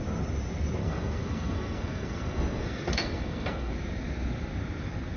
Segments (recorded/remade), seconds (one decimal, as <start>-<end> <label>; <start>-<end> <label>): 0.0-0.8 recorded; 0.8-3.7 remade; 3.7-5.2 recorded